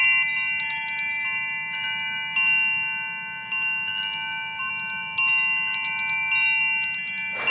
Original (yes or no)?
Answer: yes